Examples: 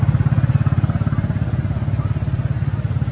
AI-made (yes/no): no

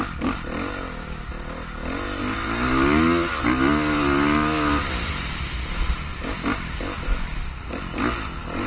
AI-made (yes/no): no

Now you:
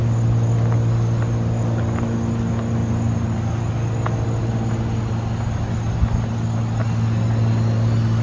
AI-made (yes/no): no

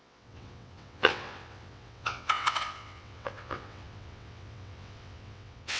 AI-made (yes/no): yes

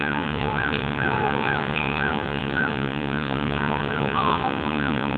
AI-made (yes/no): yes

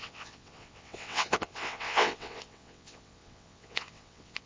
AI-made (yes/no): yes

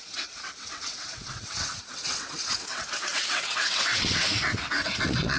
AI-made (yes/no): yes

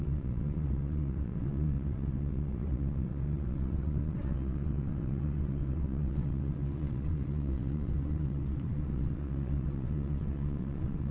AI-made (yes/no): yes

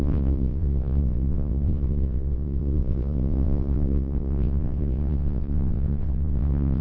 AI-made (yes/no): yes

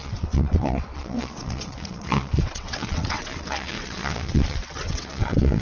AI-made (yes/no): yes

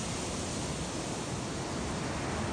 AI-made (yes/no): no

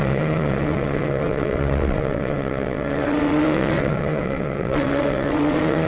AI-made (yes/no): yes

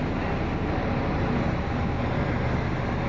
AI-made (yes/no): no